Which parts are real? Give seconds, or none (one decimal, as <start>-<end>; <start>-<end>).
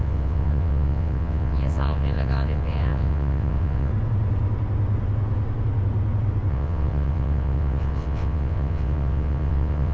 3.9-6.5